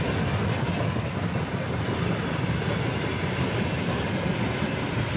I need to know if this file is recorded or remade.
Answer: recorded